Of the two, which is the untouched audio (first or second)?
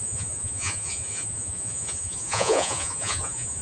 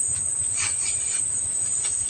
second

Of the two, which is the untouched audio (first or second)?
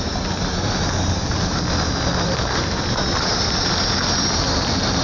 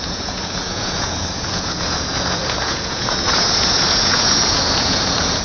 first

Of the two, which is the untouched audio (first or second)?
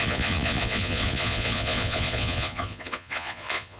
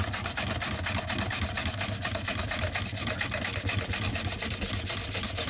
second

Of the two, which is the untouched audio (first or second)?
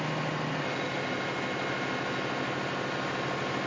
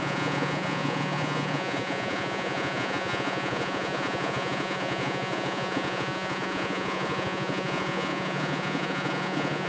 first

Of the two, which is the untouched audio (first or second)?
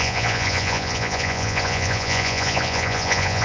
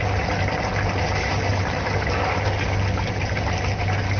second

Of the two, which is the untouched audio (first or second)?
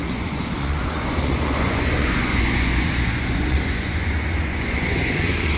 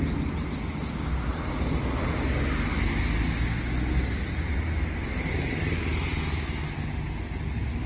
second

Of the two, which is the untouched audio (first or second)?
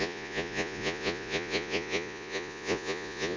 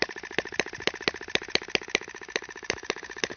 second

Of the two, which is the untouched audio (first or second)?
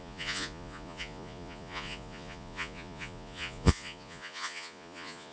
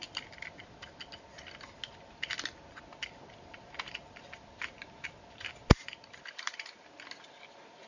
second